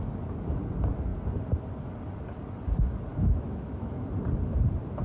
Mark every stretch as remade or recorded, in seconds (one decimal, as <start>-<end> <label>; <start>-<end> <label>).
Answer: 0.0-3.1 recorded; 3.1-4.1 remade; 4.1-5.0 recorded

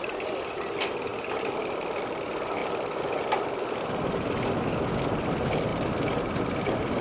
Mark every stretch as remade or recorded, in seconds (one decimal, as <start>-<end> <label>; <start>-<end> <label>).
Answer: 0.0-7.0 recorded

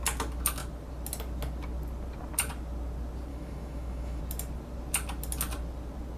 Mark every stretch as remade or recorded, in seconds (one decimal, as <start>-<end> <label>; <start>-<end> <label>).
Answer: 0.0-3.3 recorded; 3.3-4.2 remade; 4.2-6.2 recorded

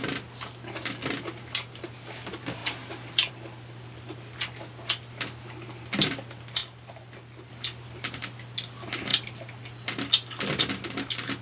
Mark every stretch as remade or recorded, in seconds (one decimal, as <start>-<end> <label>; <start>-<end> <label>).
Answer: 0.0-11.4 recorded

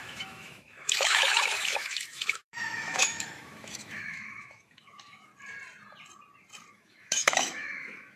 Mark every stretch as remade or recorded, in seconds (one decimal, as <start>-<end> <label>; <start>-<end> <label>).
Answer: 0.0-5.3 remade; 5.3-6.7 recorded; 6.7-8.2 remade